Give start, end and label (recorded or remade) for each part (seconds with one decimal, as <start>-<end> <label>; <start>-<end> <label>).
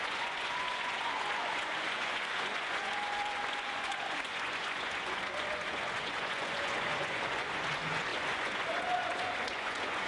0.0-10.1 remade